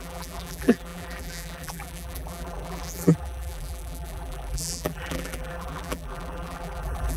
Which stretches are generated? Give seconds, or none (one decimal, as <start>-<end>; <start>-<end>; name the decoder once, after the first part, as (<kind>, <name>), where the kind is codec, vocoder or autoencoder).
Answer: 0.0-7.2 (vocoder, BigVGAN v2)